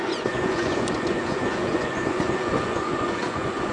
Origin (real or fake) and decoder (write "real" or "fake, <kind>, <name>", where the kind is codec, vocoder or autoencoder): fake, vocoder, Vocos